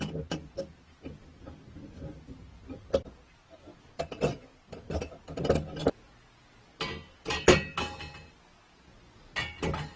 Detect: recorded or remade recorded